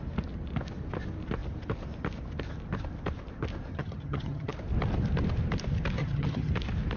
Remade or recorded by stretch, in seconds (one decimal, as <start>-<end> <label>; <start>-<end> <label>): 0.0-3.7 recorded; 3.7-4.5 remade; 4.5-6.0 recorded; 6.0-6.5 remade; 6.5-7.0 recorded